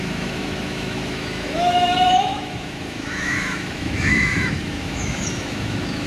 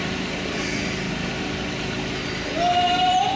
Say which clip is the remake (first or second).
first